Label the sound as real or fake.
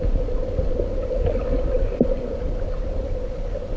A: real